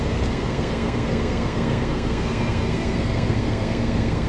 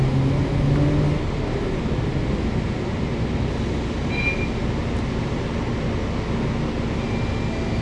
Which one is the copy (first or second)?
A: first